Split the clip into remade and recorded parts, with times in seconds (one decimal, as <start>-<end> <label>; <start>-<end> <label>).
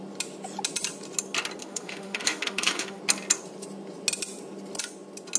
0.0-1.6 recorded; 1.6-3.0 remade; 3.0-5.4 recorded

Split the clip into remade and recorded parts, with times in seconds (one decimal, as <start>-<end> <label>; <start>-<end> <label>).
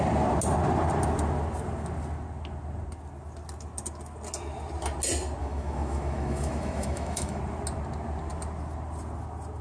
0.0-5.4 recorded; 5.4-7.4 remade; 7.4-9.6 recorded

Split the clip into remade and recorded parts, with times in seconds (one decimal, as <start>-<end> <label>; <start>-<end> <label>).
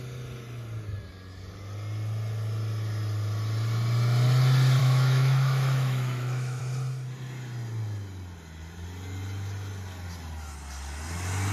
0.0-4.8 recorded; 4.8-6.6 remade; 6.6-11.5 recorded